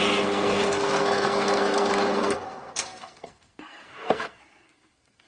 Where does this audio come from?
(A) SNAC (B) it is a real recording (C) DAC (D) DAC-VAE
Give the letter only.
A